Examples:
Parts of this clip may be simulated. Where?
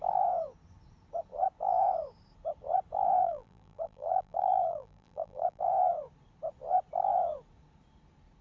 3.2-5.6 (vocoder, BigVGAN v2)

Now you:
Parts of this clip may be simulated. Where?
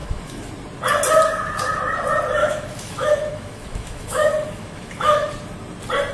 0.0-0.5 (autoencoder, DAC-VAE); 2.4-5.3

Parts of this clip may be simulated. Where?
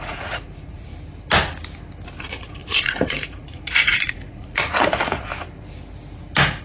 0.0-0.9 (vocoder, Vocos); 2.2-5.3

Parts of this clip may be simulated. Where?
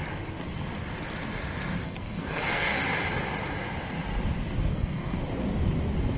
1.8-2.8 (codec, SNAC); 4.7-5.2